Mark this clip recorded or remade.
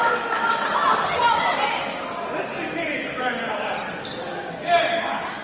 recorded